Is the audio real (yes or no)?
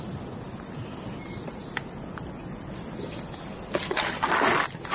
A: yes